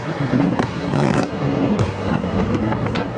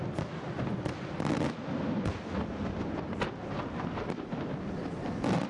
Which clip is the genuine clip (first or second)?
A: second